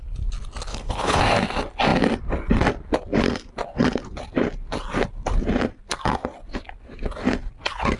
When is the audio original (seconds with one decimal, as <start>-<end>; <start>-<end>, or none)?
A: 0.0-0.7; 1.2-8.0

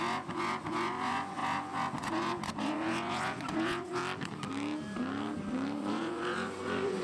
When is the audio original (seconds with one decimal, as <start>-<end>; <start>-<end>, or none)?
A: 4.0-5.8

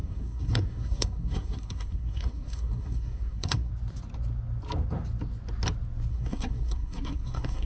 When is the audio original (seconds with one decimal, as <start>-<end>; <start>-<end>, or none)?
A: 3.7-6.1

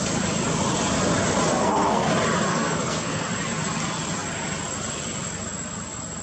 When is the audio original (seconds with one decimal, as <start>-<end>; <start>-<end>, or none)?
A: 0.0-1.5; 2.1-2.5; 3.2-6.2

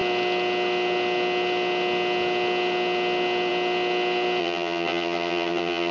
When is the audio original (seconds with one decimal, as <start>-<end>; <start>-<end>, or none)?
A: 0.0-4.4